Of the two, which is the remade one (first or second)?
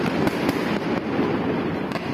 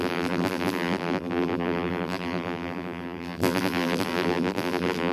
second